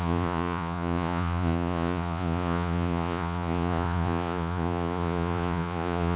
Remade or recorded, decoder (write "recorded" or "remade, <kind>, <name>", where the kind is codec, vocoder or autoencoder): remade, vocoder, Vocos